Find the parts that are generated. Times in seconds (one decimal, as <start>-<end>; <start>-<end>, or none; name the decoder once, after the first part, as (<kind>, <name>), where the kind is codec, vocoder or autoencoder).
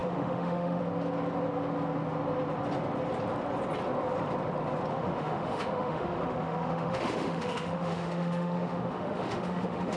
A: 0.0-0.8 (autoencoder, DAC-VAE); 4.9-10.0